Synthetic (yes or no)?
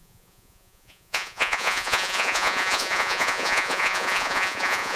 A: yes